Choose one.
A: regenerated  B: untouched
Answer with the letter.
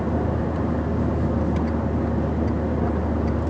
B